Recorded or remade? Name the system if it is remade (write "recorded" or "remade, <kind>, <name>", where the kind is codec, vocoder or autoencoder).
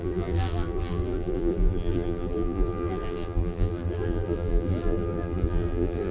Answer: remade, vocoder, BigVGAN v2